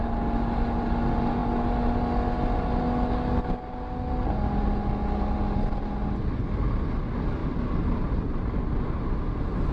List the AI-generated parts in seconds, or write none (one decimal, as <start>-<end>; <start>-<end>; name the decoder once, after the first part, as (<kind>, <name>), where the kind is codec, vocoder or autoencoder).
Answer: none